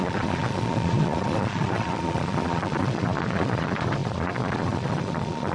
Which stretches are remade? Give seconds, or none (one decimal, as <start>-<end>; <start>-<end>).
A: 0.0-5.5